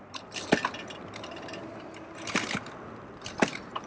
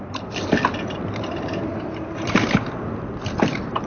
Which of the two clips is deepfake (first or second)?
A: second